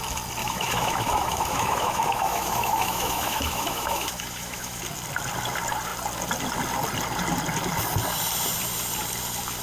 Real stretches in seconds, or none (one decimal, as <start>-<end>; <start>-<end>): 0.0-0.4; 4.8-9.6